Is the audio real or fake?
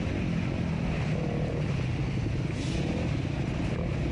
real